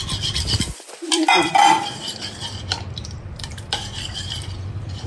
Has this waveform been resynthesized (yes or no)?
yes